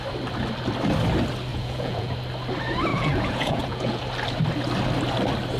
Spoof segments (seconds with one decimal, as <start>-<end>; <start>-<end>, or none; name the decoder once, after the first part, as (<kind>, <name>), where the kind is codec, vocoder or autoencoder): 1.5-2.1 (vocoder, Vocos); 2.9-4.0